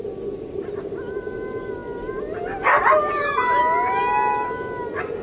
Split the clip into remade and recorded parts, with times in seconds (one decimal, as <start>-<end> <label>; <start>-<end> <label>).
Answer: 0.0-5.2 recorded

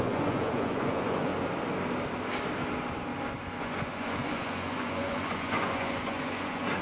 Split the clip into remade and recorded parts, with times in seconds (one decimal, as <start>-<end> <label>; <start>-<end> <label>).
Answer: 0.0-1.3 remade; 1.3-3.6 recorded; 3.6-6.8 remade

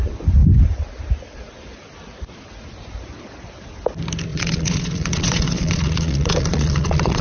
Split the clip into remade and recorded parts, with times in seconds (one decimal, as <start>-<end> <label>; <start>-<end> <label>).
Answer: 0.0-4.3 recorded; 4.3-7.2 remade

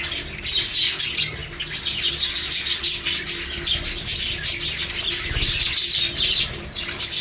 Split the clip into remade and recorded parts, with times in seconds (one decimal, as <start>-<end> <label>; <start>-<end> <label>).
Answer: 0.0-7.2 recorded

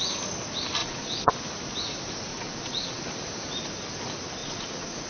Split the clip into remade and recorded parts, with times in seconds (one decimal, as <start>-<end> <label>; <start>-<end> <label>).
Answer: 0.0-0.8 recorded; 0.8-1.3 remade; 1.3-2.3 recorded; 2.3-3.0 remade; 3.0-4.4 recorded; 4.4-5.1 remade

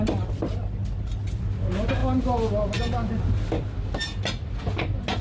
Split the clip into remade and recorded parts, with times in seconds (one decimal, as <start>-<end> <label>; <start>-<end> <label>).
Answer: 0.0-5.2 recorded